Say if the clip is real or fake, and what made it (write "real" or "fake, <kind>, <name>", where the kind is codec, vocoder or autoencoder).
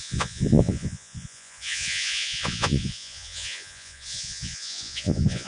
fake, vocoder, Vocos